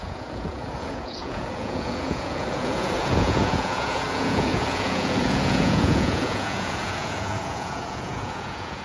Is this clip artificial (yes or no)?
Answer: yes